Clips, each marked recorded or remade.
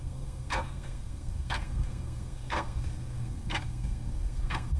remade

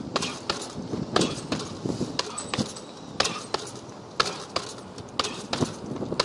recorded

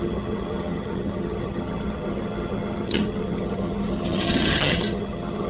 remade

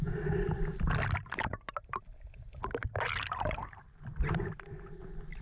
recorded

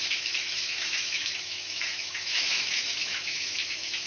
remade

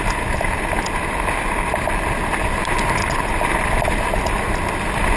recorded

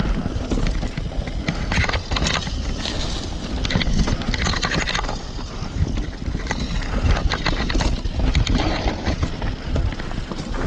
recorded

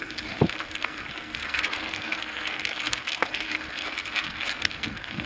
remade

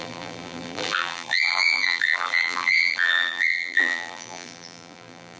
remade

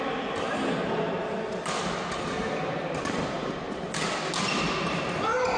recorded